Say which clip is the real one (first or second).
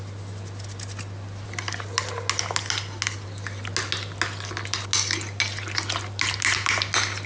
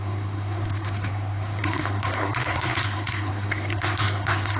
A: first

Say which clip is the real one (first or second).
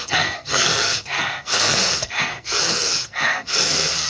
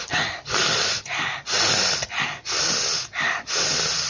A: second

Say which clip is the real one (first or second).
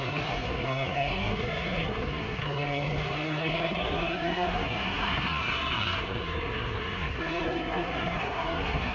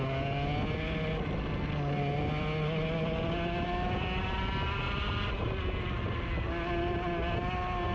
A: second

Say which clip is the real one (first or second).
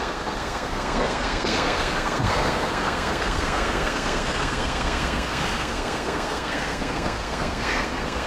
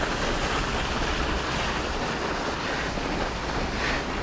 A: second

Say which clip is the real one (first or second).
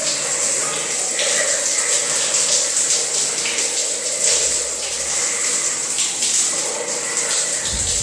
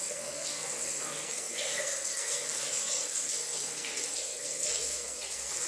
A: first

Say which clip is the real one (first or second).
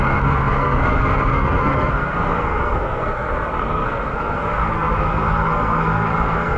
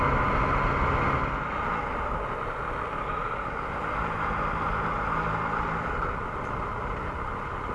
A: second